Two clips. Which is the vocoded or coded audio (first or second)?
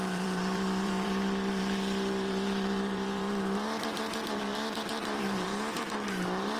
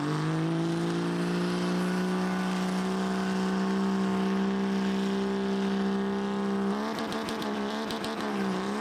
first